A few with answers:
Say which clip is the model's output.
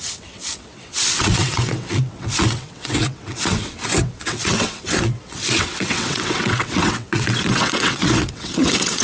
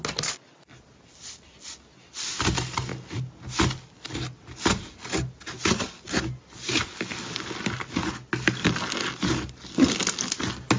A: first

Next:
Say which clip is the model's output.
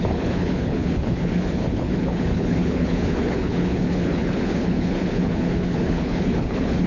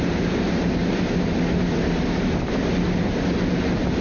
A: first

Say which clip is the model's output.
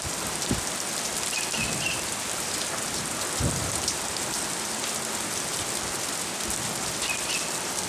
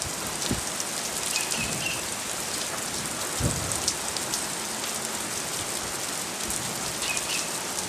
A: first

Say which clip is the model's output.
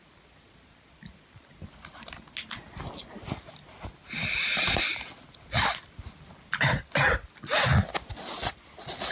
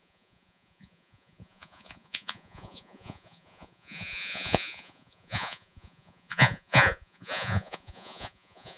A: second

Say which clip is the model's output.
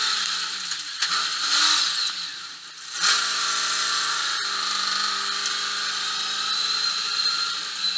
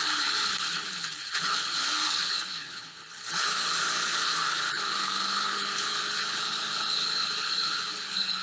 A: second